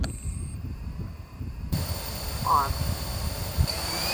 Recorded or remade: remade